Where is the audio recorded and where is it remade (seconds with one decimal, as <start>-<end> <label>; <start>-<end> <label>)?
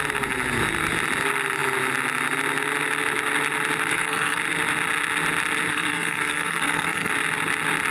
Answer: 0.0-3.9 recorded; 3.9-4.4 remade; 4.4-5.7 recorded; 5.7-7.1 remade; 7.1-7.9 recorded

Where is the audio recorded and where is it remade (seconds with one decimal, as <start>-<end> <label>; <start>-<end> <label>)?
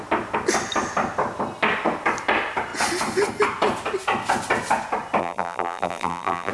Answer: 0.0-5.2 recorded; 5.2-6.5 remade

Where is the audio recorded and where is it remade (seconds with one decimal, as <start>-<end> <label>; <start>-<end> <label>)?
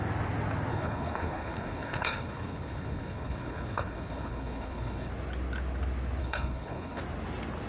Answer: 0.0-0.7 recorded; 0.7-5.1 remade; 5.1-6.2 recorded; 6.2-7.0 remade; 7.0-7.7 recorded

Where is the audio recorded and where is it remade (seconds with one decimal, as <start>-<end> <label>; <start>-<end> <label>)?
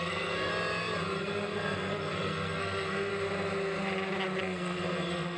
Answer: 0.0-0.5 remade; 0.5-1.2 recorded; 1.2-3.1 remade; 3.1-4.4 recorded; 4.4-5.4 remade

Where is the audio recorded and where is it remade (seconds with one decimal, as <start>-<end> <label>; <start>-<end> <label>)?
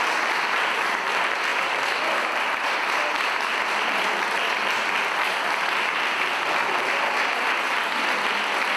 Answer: 0.0-8.8 recorded